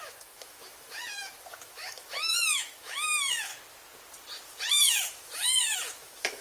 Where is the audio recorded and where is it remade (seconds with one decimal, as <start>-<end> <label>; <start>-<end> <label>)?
0.0-3.5 remade; 3.5-4.7 recorded; 4.7-6.4 remade